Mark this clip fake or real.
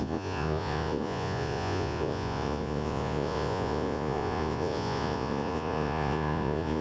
fake